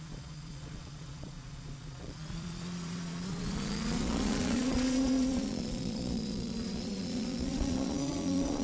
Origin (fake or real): fake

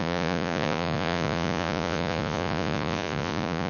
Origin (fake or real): fake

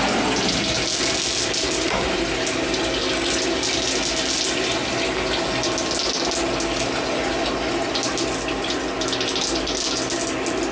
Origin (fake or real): real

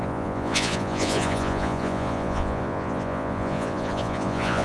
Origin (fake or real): fake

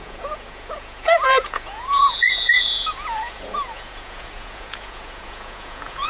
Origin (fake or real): fake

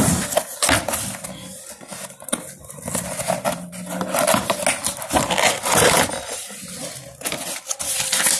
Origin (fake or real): real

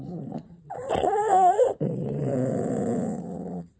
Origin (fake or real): fake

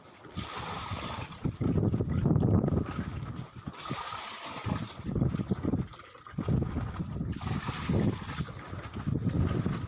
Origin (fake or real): real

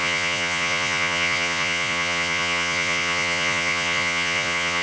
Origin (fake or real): fake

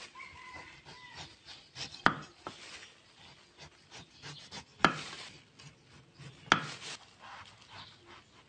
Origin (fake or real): real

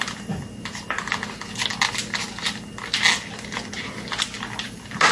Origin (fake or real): real